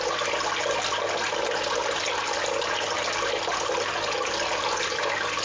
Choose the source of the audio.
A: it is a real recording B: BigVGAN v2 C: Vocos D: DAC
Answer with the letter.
A